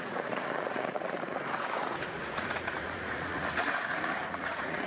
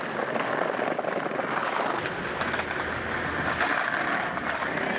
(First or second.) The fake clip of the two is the first